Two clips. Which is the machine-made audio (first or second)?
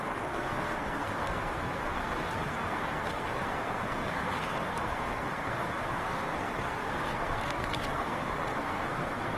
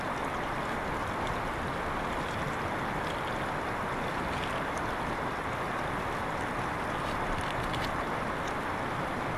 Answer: first